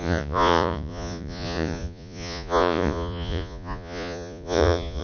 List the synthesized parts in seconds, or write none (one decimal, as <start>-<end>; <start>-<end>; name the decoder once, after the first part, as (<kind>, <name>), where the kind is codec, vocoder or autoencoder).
0.0-5.0 (vocoder, Vocos)